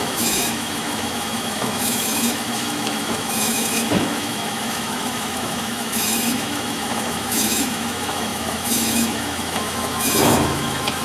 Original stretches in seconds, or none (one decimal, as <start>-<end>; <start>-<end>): none